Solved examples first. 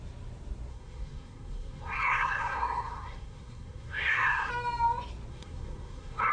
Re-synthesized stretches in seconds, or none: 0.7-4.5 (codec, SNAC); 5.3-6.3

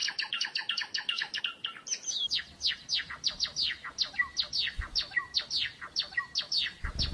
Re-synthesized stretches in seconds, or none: 0.0-1.4 (autoencoder, DAC-VAE)

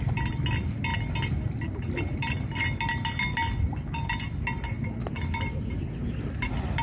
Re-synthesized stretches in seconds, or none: none

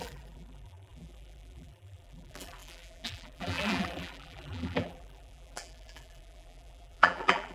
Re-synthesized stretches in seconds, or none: 0.0-7.5 (vocoder, BigVGAN v2)